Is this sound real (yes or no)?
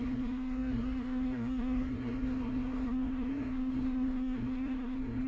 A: no